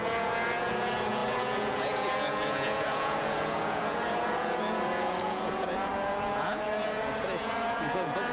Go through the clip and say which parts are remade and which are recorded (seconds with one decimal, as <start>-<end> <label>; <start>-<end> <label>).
0.0-8.3 remade